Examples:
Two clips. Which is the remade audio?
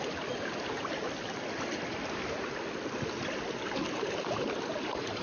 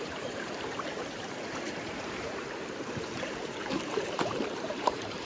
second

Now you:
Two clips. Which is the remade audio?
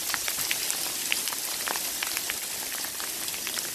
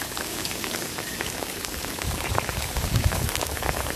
second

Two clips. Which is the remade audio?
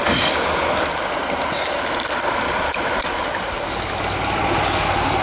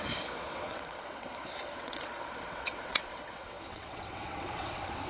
second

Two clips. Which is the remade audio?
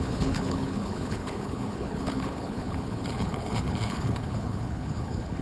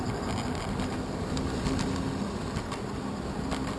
first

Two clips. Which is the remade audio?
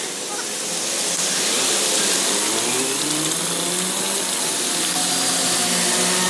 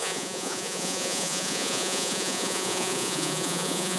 second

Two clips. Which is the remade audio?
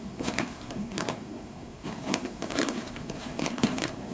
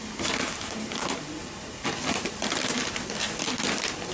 first